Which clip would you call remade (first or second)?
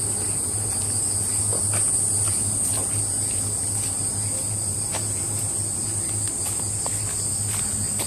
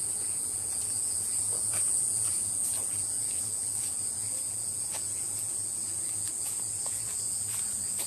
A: second